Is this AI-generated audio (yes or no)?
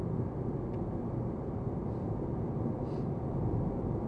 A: no